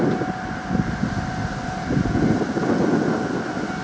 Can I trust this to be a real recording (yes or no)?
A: yes